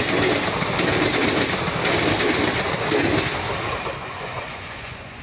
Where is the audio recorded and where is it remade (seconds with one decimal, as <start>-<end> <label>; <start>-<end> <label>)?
0.0-4.0 recorded; 4.0-5.2 remade